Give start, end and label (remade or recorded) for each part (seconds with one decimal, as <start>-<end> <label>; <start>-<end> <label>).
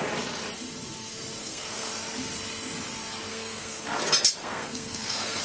0.0-1.4 recorded; 1.4-1.9 remade; 1.9-3.3 recorded; 3.3-4.0 remade; 4.0-4.4 recorded; 4.4-5.4 remade